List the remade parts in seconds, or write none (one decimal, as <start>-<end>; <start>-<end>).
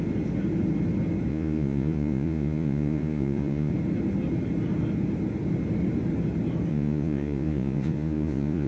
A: 1.3-3.7; 6.7-8.7